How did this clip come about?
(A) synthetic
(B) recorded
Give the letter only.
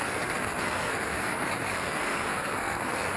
A